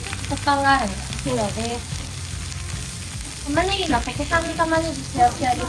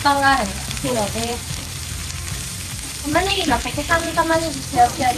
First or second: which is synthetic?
second